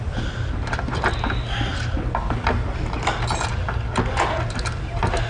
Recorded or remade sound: recorded